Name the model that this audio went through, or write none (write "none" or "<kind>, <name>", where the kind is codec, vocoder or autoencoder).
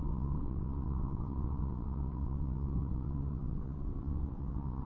vocoder, WaveNeXt